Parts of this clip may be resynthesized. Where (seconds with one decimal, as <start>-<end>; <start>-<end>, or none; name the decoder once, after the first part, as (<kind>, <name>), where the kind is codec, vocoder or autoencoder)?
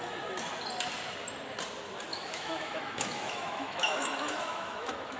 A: 2.1-5.2 (autoencoder, DAC-VAE)